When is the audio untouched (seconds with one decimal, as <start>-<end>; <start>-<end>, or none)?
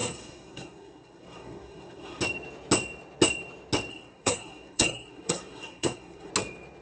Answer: 2.2-3.9; 6.3-6.8